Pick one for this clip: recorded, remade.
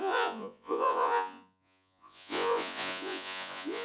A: remade